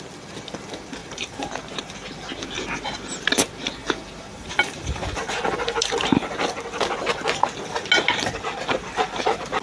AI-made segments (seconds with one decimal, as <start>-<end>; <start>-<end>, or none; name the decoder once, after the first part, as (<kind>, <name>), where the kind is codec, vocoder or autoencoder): 1.0-1.5 (vocoder, BigVGAN v2); 3.8-6.5